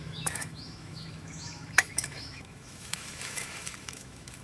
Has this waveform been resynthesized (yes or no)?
yes